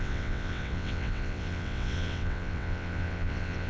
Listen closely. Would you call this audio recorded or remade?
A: remade